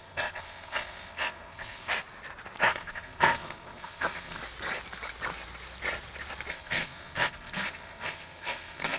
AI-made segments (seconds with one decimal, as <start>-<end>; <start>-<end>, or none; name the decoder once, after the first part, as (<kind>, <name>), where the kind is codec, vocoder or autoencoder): 0.0-1.9 (codec, SNAC); 2.7-4.4; 6.5-9.0